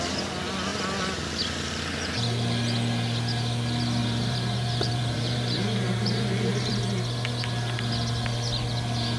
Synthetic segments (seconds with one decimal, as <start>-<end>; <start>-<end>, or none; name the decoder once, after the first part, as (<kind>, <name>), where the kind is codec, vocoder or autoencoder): 4.0-6.7 (vocoder, BigVGAN v2)